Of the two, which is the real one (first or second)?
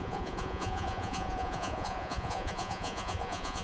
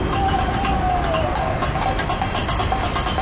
second